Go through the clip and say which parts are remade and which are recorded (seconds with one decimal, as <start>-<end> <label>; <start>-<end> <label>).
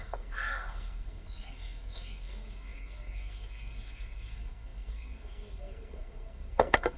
0.0-7.0 remade